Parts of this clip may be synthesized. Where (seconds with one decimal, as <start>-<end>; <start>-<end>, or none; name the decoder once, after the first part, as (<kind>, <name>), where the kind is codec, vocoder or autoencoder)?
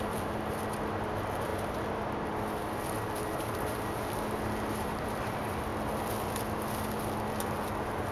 none